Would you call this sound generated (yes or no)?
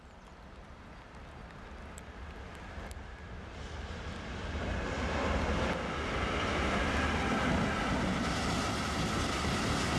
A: no